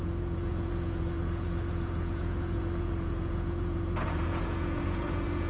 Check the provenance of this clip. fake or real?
fake